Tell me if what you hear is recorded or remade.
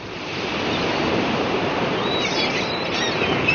remade